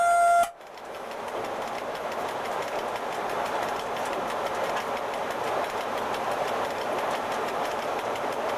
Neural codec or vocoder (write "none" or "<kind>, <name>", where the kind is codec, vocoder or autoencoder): none